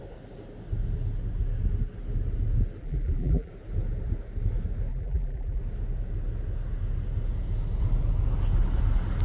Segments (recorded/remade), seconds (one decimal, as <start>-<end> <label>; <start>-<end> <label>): 0.0-2.8 recorded; 2.8-3.5 remade; 3.5-4.9 recorded; 4.9-5.6 remade; 5.6-9.2 recorded